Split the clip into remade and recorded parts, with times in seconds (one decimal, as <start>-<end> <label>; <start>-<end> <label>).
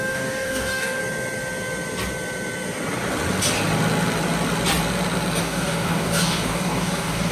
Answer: 0.0-1.0 remade; 1.0-5.4 recorded; 5.4-7.3 remade